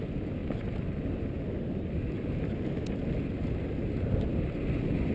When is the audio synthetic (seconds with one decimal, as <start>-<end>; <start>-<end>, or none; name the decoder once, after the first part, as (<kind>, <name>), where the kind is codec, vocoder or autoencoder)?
none